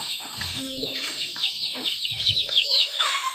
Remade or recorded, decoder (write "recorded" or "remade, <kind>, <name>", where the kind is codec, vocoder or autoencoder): remade, autoencoder, DAC-VAE